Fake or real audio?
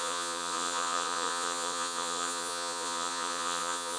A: fake